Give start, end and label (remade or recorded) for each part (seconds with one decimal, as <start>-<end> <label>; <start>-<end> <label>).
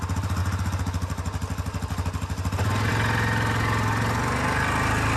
0.0-5.2 recorded